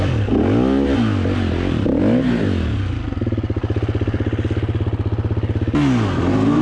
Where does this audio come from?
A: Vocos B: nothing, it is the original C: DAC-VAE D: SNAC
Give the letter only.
B